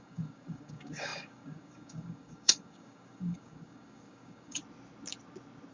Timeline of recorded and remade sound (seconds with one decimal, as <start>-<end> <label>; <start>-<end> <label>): 0.0-4.6 remade; 4.6-5.7 recorded